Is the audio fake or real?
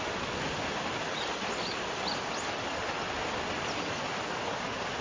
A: real